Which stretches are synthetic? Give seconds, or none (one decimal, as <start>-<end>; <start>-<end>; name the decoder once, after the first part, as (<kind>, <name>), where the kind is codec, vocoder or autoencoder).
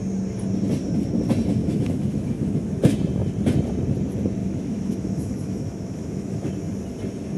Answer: 1.6-2.8 (autoencoder, DAC-VAE); 4.4-6.5